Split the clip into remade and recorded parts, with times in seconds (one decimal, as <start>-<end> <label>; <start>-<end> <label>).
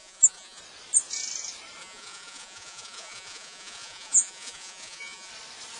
0.0-0.6 remade; 0.6-1.8 recorded; 1.8-5.3 remade; 5.3-5.8 recorded